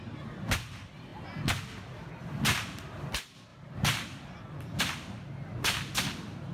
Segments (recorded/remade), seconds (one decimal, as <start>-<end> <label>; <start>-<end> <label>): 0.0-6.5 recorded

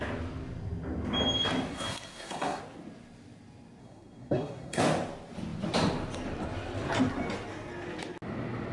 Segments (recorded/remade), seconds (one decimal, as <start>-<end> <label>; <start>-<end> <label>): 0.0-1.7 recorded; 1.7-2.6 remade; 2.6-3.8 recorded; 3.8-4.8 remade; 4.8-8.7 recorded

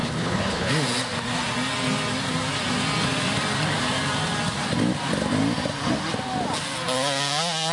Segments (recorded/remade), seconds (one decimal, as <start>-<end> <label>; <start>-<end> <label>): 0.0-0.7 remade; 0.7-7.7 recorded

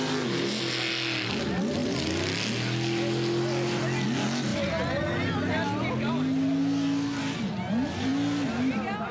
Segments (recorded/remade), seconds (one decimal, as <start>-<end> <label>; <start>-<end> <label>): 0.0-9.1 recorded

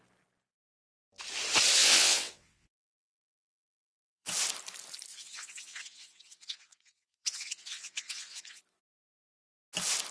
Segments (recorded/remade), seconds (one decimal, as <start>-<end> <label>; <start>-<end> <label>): 0.0-1.8 recorded; 1.8-4.3 remade; 4.3-5.1 recorded; 5.1-8.6 remade; 8.6-10.1 recorded

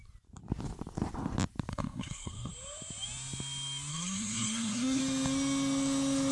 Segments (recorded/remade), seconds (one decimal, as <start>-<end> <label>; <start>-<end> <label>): 0.0-1.7 recorded; 1.7-2.5 remade; 2.5-3.9 recorded; 3.9-5.0 remade; 5.0-6.3 recorded

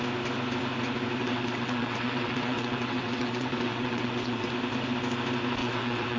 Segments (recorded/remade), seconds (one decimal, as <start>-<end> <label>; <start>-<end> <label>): 0.0-1.2 recorded; 1.2-4.5 remade; 4.5-5.6 recorded; 5.6-6.2 remade

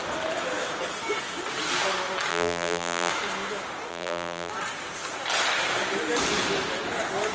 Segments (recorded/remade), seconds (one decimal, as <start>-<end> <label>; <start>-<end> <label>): 0.0-2.3 recorded; 2.3-3.1 remade; 3.1-3.9 recorded; 3.9-4.5 remade; 4.5-7.3 recorded